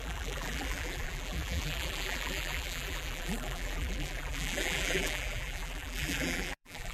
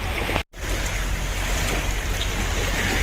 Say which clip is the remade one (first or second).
first